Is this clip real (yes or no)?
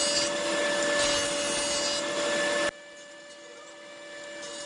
yes